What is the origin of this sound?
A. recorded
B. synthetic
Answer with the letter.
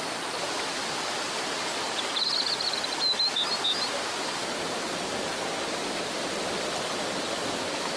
A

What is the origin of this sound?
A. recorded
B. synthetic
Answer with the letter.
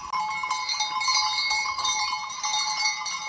A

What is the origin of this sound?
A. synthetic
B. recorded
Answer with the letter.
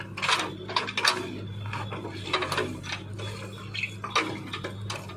B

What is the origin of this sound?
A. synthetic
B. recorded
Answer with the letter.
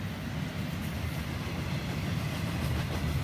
B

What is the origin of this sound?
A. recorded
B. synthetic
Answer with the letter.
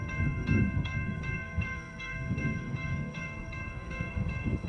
B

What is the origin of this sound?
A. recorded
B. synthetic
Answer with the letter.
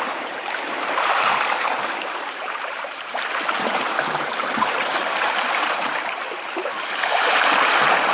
B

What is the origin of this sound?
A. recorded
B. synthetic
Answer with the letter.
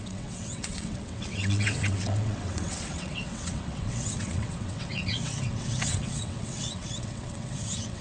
B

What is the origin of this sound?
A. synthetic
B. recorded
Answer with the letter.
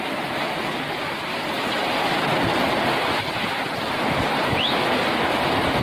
A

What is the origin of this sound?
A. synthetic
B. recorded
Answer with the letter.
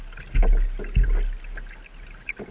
B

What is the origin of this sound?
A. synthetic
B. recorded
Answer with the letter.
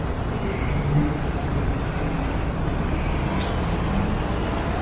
B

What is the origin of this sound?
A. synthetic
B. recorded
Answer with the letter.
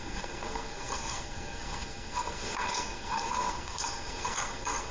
A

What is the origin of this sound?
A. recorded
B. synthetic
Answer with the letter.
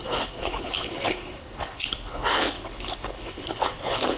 B